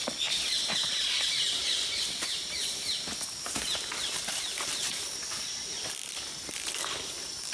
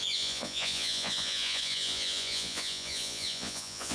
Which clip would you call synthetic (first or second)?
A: second